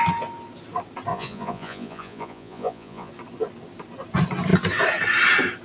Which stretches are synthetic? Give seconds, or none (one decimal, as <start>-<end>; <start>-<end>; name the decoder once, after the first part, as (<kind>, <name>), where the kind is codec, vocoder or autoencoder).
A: 1.1-3.1 (vocoder, Vocos)